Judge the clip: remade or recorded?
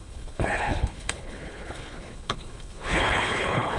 remade